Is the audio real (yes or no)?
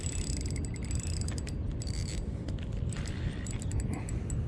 yes